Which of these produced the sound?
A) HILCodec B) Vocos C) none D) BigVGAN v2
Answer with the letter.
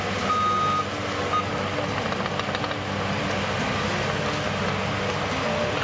C